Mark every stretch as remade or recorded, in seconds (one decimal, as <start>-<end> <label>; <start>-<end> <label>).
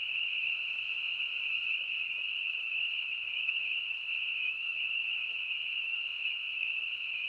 0.0-1.3 remade; 1.3-2.6 recorded; 2.6-7.3 remade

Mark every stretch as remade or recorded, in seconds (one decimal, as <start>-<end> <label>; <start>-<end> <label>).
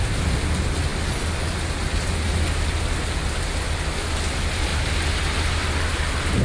0.0-6.4 recorded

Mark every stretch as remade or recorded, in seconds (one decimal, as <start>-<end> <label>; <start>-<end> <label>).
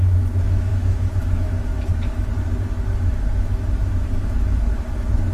0.0-2.3 remade; 2.3-3.1 recorded; 3.1-5.3 remade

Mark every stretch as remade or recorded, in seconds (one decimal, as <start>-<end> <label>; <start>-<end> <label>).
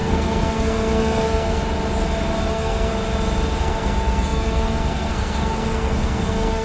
0.0-1.6 remade; 1.6-2.5 recorded; 2.5-2.9 remade; 2.9-3.6 recorded; 3.6-6.6 remade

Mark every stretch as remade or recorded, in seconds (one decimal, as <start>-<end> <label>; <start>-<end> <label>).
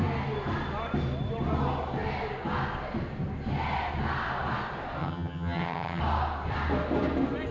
0.0-5.0 recorded; 5.0-6.0 remade; 6.0-7.5 recorded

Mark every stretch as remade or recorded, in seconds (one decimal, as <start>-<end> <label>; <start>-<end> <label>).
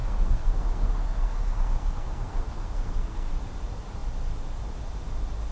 0.0-3.3 remade; 3.3-5.5 recorded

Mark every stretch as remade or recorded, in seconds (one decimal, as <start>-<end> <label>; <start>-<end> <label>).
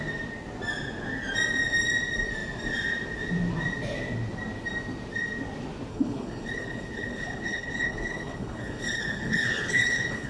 0.0-5.9 recorded; 5.9-10.3 remade